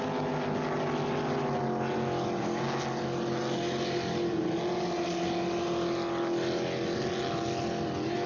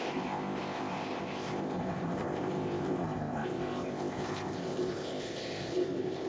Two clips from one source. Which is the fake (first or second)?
second